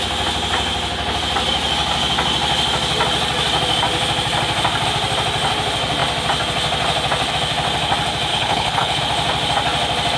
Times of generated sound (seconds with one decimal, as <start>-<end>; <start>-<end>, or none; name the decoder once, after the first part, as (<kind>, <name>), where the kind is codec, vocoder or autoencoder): 8.3-9.0 (codec, HILCodec)

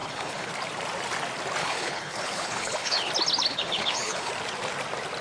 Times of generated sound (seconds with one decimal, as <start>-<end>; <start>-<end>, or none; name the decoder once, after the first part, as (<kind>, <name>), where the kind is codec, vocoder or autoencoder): 0.0-0.5 (codec, HILCodec); 1.6-3.1; 3.5-4.3